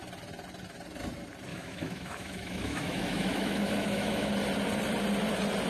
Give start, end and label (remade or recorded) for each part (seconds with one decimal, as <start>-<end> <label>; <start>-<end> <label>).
0.0-1.5 recorded; 1.5-4.3 remade; 4.3-5.7 recorded